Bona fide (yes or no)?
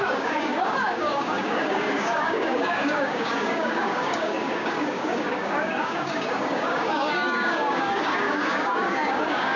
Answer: no